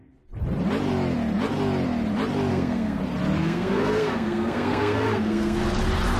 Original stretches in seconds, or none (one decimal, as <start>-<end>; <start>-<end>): 0.0-2.5; 3.0-3.4; 5.6-6.2